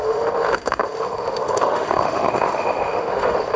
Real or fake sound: fake